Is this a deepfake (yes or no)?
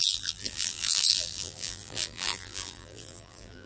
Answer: yes